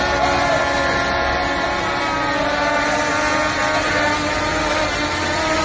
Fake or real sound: real